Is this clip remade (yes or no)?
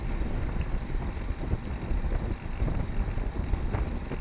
no